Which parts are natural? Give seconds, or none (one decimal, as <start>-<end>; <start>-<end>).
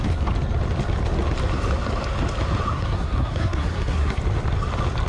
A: 0.0-2.7; 4.2-5.1